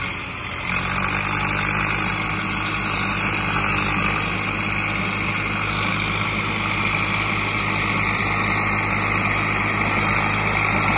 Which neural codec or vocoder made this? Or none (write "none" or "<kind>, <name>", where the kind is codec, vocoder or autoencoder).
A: none